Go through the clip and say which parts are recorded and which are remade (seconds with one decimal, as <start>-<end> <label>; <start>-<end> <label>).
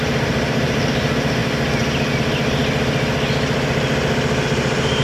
0.0-1.4 remade; 1.4-2.2 recorded; 2.2-2.6 remade; 2.6-4.5 recorded; 4.5-5.0 remade